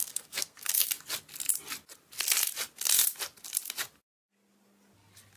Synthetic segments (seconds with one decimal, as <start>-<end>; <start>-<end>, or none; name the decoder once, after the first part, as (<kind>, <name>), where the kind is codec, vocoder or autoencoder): 0.0-0.9 (codec, SNAC)